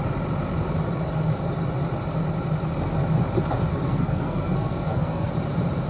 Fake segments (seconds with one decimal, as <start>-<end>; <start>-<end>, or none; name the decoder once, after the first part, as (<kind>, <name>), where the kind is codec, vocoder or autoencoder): 3.7-5.3 (codec, SNAC)